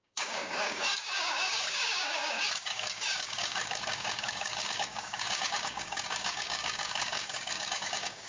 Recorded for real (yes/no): no